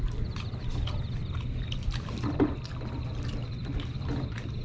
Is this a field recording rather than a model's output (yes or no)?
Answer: no